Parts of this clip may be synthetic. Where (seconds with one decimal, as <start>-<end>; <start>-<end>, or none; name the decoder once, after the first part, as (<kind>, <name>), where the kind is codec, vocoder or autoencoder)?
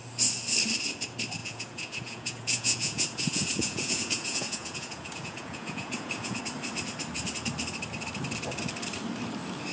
1.4-6.4 (vocoder, Vocos)